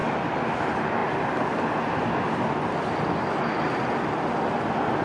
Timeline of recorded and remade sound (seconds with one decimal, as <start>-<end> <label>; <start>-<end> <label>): 0.0-5.0 recorded